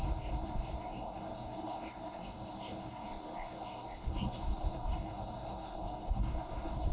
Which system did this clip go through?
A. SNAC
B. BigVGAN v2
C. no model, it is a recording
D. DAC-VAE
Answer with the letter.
A